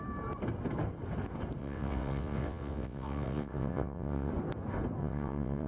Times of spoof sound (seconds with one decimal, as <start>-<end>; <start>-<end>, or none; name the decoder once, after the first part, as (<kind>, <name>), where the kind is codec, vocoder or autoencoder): 1.6-4.3 (vocoder, WaveNeXt); 5.0-5.7